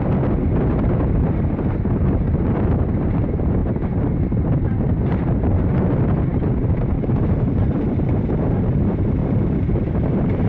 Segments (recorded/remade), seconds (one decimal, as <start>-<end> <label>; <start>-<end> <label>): 0.0-10.5 remade